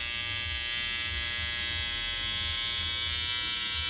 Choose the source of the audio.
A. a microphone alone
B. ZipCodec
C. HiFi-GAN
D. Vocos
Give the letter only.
A